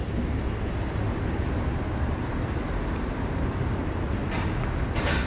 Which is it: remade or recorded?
recorded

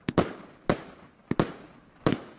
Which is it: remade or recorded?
recorded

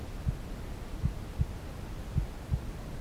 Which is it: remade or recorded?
remade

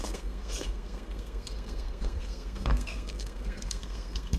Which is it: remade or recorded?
remade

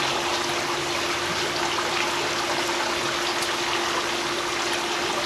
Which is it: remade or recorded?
recorded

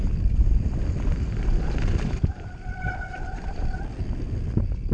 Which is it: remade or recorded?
recorded